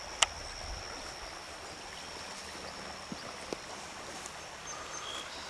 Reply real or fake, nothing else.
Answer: real